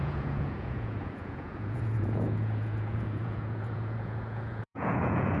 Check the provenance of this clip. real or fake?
fake